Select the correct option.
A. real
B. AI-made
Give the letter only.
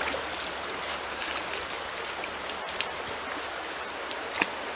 A